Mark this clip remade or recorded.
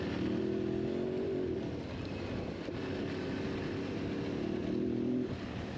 recorded